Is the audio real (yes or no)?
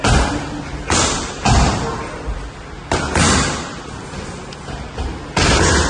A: yes